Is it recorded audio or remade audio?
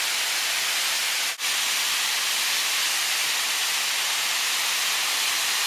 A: recorded